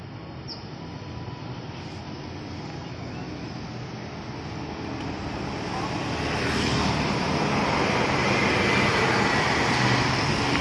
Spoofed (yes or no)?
no